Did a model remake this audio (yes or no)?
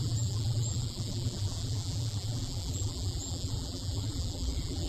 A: yes